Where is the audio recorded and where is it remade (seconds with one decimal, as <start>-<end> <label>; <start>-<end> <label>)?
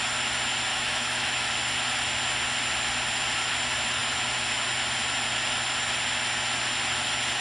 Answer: 0.0-0.7 recorded; 0.7-1.5 remade; 1.5-7.4 recorded